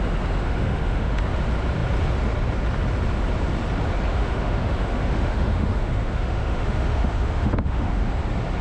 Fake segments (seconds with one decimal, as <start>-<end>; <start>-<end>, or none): 0.4-1.2; 4.1-8.1